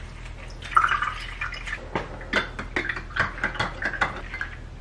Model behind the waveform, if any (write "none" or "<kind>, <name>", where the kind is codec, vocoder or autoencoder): none